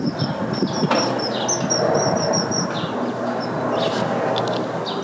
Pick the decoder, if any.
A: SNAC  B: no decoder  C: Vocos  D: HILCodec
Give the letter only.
B